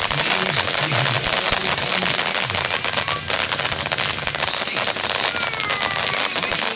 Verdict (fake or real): real